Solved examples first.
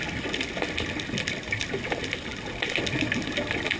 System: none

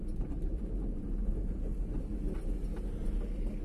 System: none